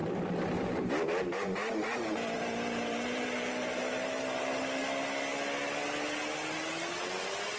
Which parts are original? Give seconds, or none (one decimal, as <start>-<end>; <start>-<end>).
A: 0.9-1.3; 4.4-7.6